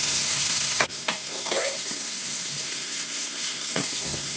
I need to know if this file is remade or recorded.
remade